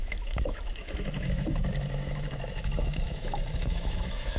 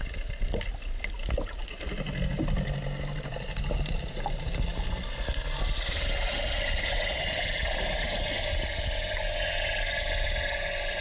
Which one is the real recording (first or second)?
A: second